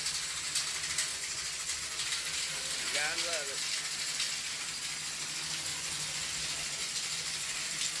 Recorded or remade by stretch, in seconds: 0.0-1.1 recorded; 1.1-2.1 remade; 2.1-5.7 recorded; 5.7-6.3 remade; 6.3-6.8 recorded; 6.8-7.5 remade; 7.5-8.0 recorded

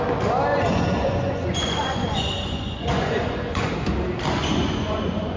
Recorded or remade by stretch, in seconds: 0.0-0.5 recorded; 0.5-3.7 remade; 3.7-4.4 recorded; 4.4-5.4 remade

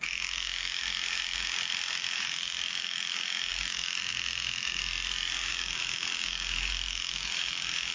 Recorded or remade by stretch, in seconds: 0.0-4.8 remade; 4.8-5.5 recorded; 5.5-7.9 remade

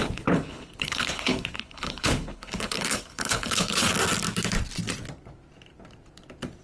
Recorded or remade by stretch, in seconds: 0.0-3.9 remade; 3.9-6.6 recorded

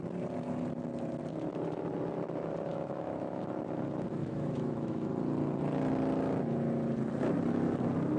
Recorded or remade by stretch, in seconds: 0.0-2.7 recorded; 2.7-3.4 remade; 3.4-4.2 recorded; 4.2-5.1 remade; 5.1-8.2 recorded

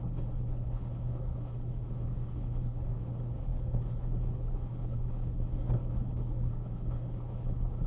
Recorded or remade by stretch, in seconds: 0.0-7.9 remade